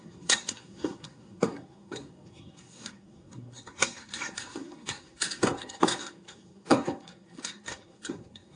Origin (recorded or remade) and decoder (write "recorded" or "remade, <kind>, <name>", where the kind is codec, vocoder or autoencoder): remade, codec, SNAC